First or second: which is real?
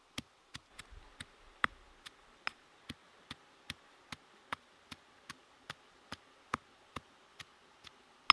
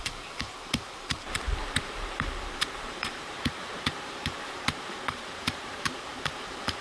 first